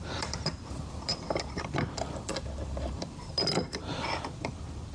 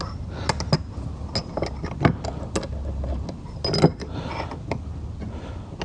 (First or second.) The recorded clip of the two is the second